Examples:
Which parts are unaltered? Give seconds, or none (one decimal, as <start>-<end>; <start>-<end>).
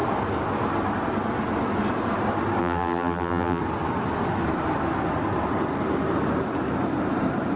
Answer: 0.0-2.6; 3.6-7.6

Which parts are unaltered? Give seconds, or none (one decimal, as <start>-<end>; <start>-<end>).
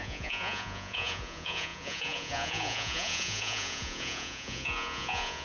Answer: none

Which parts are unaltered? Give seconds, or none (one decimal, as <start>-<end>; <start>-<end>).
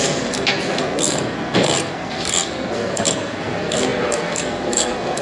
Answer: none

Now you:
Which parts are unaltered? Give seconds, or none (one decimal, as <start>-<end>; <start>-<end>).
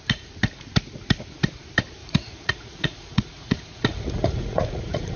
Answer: 0.0-2.0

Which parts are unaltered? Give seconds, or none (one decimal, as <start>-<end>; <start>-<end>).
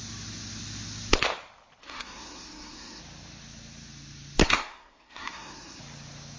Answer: 0.0-1.8; 3.0-4.4; 5.8-6.4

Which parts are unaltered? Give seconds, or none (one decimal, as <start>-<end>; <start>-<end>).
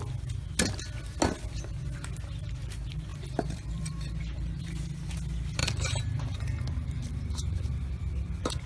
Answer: 0.0-3.1; 4.6-5.6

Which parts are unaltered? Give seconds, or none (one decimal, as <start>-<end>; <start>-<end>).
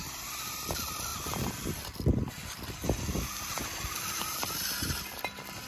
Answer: 0.0-1.1; 4.5-5.7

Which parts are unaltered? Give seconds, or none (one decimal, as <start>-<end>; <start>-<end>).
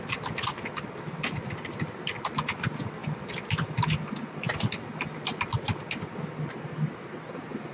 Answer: 0.0-7.7